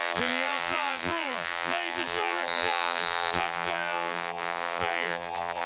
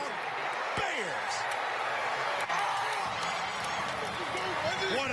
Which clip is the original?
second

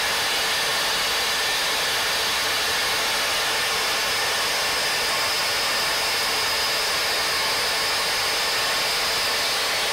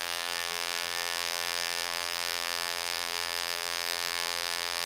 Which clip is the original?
first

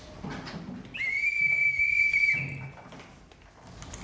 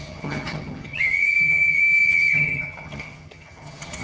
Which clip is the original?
first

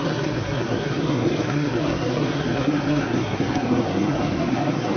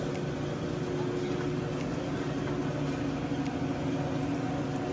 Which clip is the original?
second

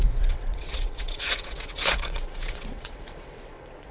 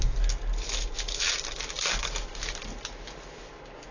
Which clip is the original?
second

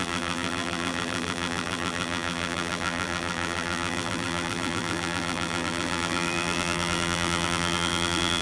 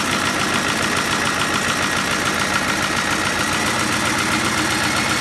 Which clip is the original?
second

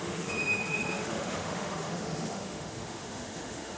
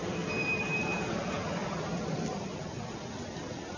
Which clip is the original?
second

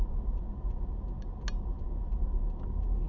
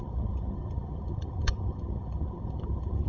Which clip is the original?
first